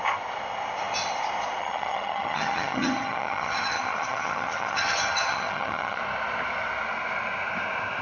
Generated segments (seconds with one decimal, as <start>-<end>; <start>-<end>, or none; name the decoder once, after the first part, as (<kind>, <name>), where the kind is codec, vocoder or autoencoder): 1.6-6.0 (vocoder, HiFi-GAN)